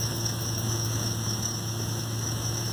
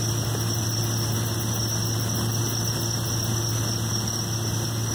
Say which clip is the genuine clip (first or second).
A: second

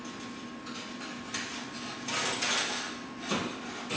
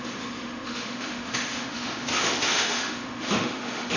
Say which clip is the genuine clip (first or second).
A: first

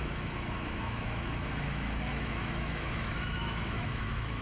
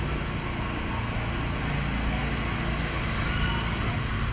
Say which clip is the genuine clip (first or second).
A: second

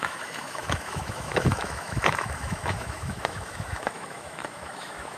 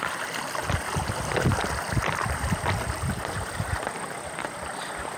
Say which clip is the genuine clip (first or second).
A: second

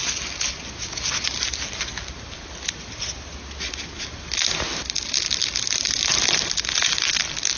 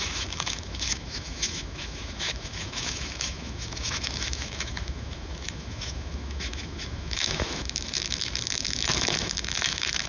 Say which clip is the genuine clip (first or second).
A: first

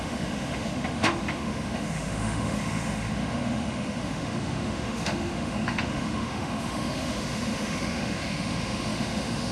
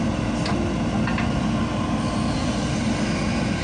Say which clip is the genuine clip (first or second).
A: second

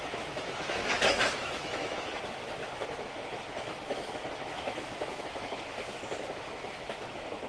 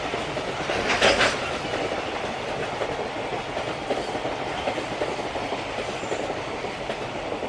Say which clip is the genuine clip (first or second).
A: second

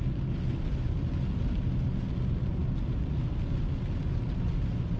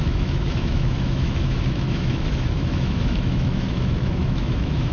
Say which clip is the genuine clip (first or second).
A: first